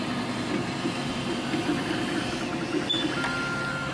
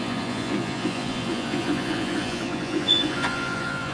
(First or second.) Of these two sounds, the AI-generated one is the second